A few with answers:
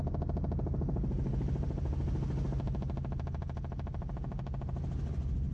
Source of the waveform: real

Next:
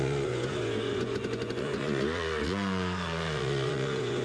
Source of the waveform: fake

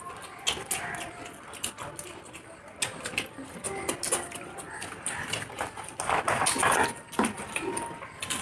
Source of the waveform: real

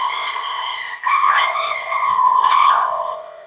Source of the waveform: fake